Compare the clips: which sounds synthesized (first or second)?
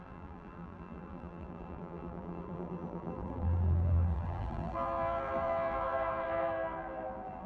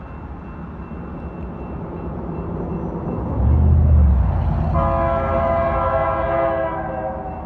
first